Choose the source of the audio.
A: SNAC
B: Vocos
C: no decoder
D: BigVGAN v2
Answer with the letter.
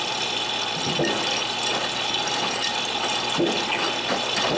C